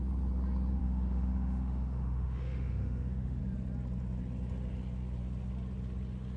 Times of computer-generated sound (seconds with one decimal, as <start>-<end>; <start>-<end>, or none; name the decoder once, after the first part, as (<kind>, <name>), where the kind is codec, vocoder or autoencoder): 0.8-3.4 (autoencoder, DAC-VAE)